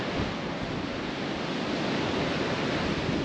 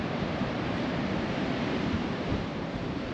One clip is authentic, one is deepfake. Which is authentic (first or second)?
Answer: first